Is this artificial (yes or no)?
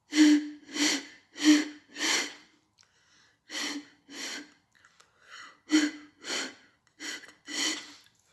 no